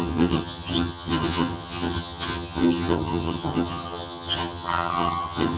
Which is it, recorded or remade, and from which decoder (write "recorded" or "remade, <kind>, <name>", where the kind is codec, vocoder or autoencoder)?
remade, vocoder, HiFi-GAN